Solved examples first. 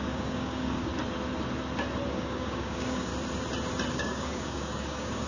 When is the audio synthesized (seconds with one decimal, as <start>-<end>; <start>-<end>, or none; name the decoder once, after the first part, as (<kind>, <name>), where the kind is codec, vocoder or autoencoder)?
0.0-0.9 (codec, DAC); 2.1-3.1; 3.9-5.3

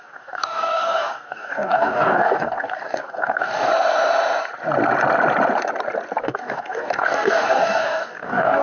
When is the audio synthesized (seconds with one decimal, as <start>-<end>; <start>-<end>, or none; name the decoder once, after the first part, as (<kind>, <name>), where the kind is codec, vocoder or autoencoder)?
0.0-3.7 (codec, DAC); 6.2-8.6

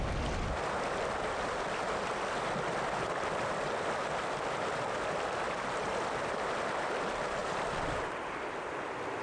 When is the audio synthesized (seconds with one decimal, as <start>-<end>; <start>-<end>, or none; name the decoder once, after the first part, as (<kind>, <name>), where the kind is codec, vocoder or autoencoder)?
none

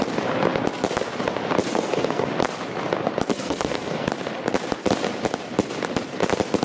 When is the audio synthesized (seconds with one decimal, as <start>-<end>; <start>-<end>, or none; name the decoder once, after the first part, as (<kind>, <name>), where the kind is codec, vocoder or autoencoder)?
1.7-2.3 (codec, SNAC); 3.3-4.1